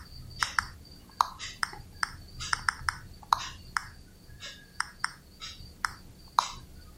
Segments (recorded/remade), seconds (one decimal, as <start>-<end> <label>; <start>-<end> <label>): 0.0-3.8 recorded; 3.8-5.6 remade; 5.6-7.0 recorded

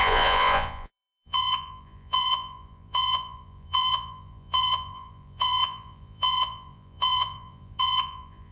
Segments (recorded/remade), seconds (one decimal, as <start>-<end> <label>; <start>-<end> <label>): 0.0-8.5 remade

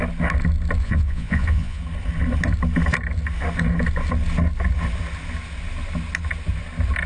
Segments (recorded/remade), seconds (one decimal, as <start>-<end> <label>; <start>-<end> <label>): 0.0-0.8 recorded; 0.8-1.8 remade; 1.8-7.1 recorded

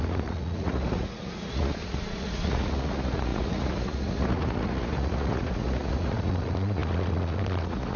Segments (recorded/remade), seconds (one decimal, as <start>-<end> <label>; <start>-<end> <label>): 0.0-8.0 remade

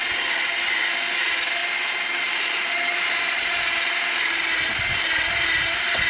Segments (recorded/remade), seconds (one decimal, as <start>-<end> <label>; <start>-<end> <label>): 0.0-6.1 recorded

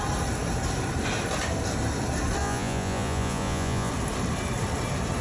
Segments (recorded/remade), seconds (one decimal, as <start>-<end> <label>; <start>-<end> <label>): 0.0-2.4 recorded; 2.4-3.9 remade; 3.9-5.2 recorded

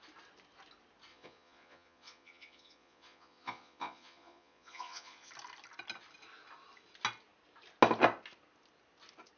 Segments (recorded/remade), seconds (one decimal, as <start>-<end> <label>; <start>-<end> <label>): 0.0-1.1 recorded; 1.1-5.3 remade; 5.3-9.4 recorded

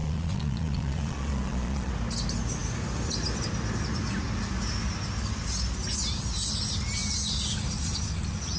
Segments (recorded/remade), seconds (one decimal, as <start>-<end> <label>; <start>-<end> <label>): 0.0-1.9 remade; 1.9-8.6 recorded